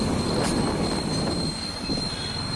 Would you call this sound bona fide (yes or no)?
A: yes